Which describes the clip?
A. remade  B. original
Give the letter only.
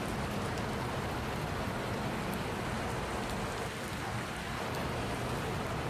B